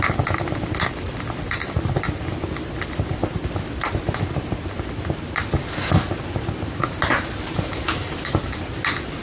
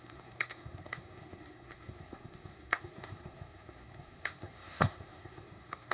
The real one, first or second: first